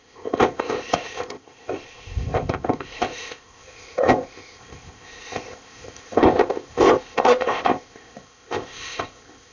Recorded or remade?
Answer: remade